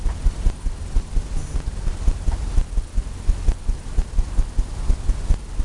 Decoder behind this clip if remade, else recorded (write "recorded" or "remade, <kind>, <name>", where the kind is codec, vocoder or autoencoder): recorded